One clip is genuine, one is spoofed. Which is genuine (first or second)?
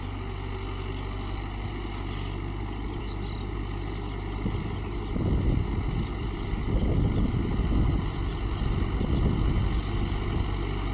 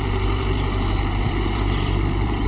first